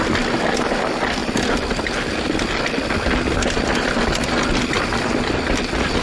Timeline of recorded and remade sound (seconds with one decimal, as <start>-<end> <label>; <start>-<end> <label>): 0.0-6.0 recorded

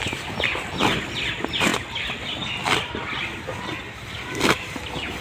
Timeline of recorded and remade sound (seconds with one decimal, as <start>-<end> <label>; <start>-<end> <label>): 0.0-5.2 recorded

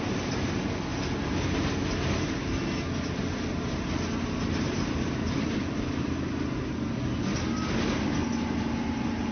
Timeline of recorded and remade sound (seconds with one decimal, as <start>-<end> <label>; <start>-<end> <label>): 0.0-9.3 recorded

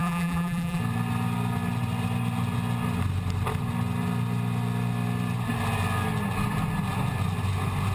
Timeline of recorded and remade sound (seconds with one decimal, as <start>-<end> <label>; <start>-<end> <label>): 0.0-0.8 remade; 0.8-7.9 recorded

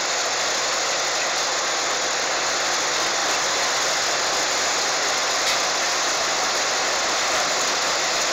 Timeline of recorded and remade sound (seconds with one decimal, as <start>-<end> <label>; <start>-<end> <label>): 0.0-8.3 recorded

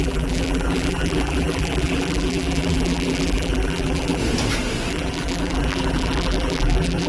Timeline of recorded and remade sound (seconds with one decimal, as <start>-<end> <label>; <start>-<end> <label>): 0.0-4.2 remade; 4.2-4.9 recorded; 4.9-7.1 remade

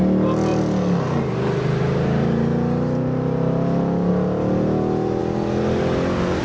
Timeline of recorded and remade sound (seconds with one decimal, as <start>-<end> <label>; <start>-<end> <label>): 0.0-6.4 recorded